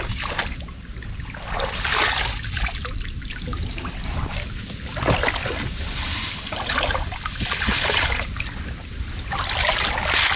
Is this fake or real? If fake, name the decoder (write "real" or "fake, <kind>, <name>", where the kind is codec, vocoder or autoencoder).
real